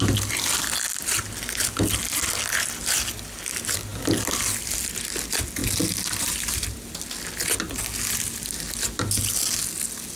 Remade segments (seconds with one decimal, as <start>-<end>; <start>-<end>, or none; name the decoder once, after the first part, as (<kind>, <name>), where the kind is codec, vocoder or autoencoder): none